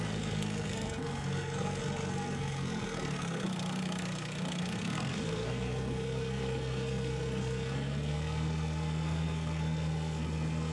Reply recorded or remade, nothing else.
remade